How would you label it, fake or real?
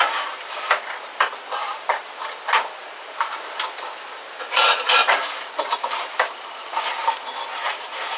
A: fake